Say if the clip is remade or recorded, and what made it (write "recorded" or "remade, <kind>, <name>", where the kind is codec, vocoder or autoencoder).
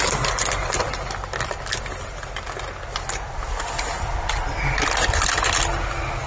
recorded